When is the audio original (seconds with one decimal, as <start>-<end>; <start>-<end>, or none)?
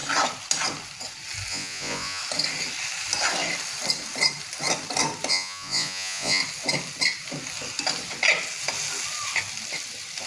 0.0-1.5; 2.2-5.3; 6.4-10.3